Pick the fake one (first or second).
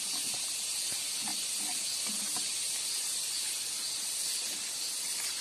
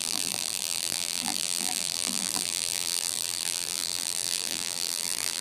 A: second